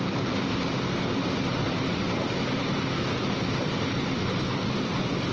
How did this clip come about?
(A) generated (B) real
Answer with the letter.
B